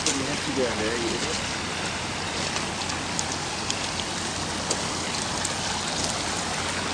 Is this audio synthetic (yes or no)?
no